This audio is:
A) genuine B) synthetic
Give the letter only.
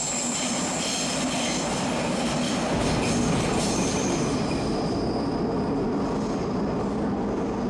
A